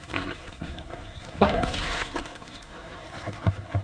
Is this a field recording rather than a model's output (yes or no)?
no